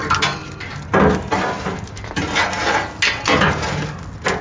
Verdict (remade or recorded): recorded